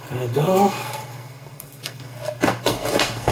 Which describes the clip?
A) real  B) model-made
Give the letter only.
B